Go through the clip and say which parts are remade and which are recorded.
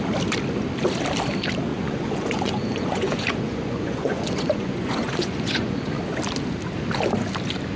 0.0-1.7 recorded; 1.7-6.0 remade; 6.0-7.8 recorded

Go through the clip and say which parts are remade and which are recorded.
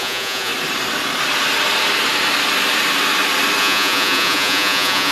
0.0-0.5 remade; 0.5-3.6 recorded; 3.6-5.1 remade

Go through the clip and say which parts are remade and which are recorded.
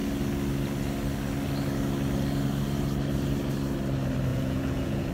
0.0-4.3 recorded; 4.3-5.1 remade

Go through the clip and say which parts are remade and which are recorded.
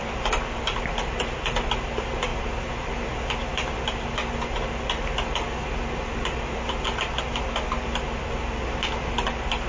0.0-9.7 recorded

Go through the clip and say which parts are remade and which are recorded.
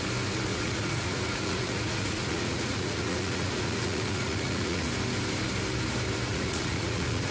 0.0-0.5 recorded; 0.5-4.9 remade; 4.9-6.3 recorded; 6.3-7.3 remade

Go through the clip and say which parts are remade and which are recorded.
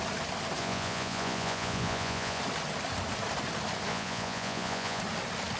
0.0-0.6 recorded; 0.6-2.4 remade; 2.4-3.9 recorded; 3.9-5.0 remade; 5.0-5.6 recorded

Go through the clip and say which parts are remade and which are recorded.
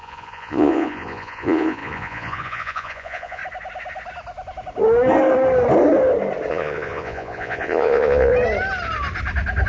0.0-3.4 remade; 3.4-6.5 recorded; 6.5-8.3 remade; 8.3-9.7 recorded